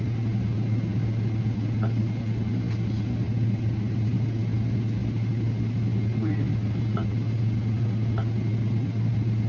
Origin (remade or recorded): recorded